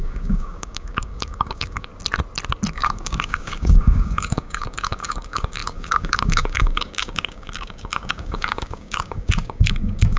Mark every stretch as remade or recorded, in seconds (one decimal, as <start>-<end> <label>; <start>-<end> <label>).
0.0-1.9 remade; 1.9-2.7 recorded; 2.7-10.2 remade